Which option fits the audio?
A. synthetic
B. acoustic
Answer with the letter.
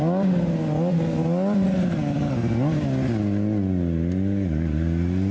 B